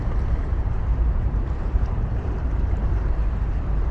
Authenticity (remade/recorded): remade